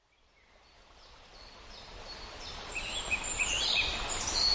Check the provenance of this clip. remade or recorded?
recorded